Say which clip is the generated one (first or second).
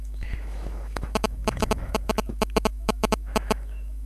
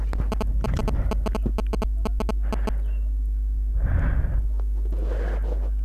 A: first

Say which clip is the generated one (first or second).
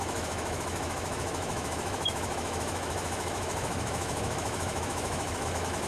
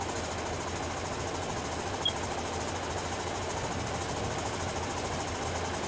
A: first